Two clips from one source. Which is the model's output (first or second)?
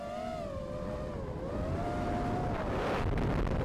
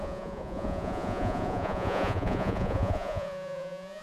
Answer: second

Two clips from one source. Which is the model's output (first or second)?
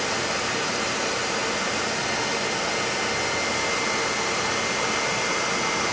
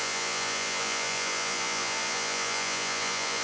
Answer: second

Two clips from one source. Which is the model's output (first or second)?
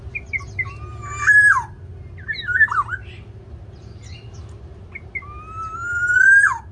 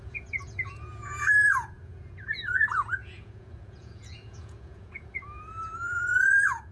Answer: second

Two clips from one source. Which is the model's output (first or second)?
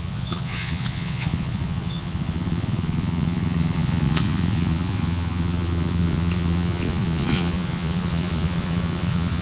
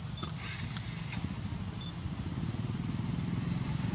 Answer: first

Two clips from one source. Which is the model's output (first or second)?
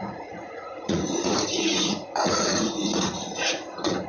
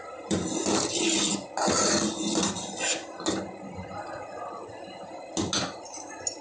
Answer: first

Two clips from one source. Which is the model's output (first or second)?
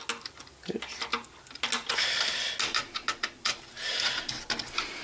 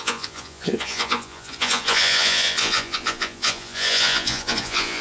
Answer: second